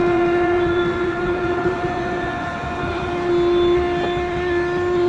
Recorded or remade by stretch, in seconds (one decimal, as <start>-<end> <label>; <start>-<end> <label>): 0.0-3.1 remade; 3.1-5.1 recorded